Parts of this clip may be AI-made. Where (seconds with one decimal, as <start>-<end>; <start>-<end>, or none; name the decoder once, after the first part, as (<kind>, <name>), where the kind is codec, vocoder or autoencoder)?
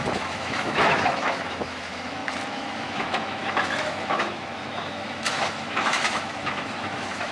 0.0-7.3 (autoencoder, DAC-VAE)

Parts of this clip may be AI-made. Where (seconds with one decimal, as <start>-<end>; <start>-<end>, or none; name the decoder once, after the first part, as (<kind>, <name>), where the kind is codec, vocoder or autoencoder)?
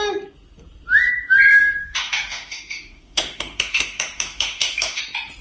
1.8-5.0 (autoencoder, DAC-VAE)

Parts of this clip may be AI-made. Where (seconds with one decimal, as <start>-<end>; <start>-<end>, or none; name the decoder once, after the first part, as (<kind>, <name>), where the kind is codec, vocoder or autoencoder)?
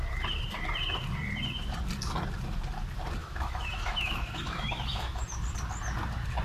3.2-5.2 (autoencoder, DAC-VAE)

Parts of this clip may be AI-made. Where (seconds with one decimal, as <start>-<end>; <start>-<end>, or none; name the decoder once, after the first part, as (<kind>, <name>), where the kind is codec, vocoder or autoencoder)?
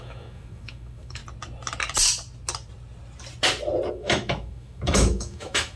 0.0-1.2 (autoencoder, DAC-VAE); 3.9-5.8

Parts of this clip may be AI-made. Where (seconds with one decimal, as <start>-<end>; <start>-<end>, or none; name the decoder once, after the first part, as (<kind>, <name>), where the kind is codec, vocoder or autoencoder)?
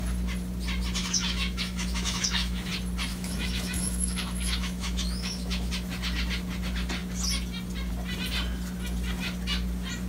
1.0-2.7 (autoencoder, DAC-VAE); 3.1-5.7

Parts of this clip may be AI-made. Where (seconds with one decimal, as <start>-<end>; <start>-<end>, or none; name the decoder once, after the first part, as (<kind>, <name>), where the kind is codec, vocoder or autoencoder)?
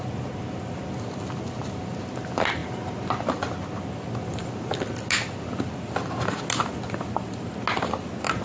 none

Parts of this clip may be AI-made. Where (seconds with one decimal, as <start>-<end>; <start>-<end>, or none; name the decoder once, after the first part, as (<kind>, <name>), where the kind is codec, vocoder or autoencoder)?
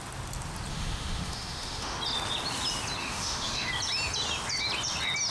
0.7-2.0 (autoencoder, DAC-VAE); 3.0-3.7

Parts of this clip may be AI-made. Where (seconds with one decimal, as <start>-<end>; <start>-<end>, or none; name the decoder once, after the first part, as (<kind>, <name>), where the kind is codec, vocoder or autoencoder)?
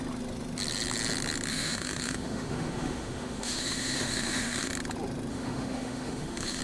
1.5-4.7 (autoencoder, DAC-VAE); 5.3-6.6